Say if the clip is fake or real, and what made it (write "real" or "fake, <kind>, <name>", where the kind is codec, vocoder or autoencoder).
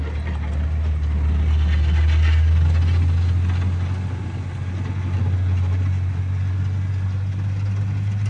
real